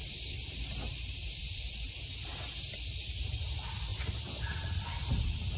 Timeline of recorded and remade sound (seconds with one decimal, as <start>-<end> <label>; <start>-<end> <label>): 0.0-2.0 remade; 2.0-3.9 recorded; 3.9-5.6 remade